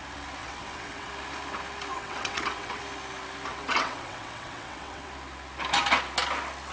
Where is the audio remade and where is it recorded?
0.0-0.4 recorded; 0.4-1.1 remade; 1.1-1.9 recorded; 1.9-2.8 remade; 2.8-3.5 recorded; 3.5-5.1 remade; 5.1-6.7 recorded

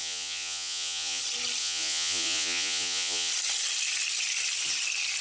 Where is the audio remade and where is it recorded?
0.0-1.2 remade; 1.2-1.6 recorded; 1.6-3.3 remade; 3.3-5.2 recorded

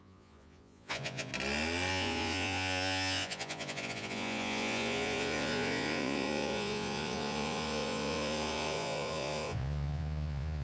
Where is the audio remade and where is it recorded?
0.0-1.3 remade; 1.3-1.9 recorded; 1.9-10.6 remade

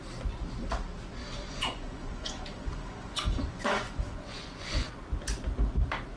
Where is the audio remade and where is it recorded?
0.0-1.2 recorded; 1.2-4.9 remade; 4.9-6.2 recorded

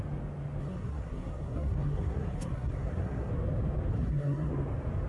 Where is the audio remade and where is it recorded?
0.0-0.6 recorded; 0.6-3.3 remade; 3.3-3.9 recorded; 3.9-4.5 remade; 4.5-5.1 recorded